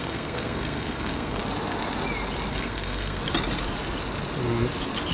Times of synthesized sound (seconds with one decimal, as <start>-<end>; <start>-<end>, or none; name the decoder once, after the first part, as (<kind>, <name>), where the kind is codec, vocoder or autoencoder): 0.0-1.4 (codec, SNAC); 2.5-3.2